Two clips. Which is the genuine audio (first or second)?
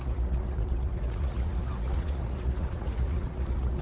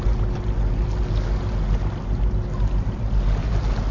second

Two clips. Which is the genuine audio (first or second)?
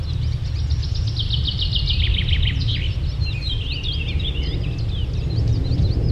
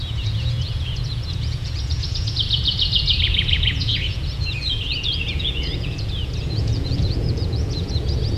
first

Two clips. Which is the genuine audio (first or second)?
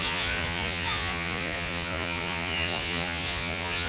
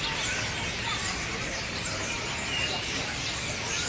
second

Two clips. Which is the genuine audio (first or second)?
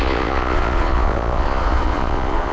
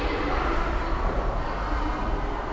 second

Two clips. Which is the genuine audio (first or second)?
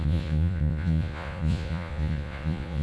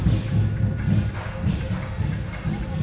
second